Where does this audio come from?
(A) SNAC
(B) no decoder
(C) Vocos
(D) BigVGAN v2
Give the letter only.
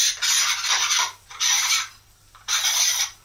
D